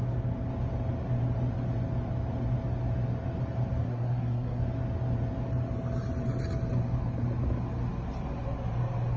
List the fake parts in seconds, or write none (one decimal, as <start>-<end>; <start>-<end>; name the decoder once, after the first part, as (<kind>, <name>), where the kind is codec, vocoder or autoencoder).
3.8-4.6 (codec, SNAC)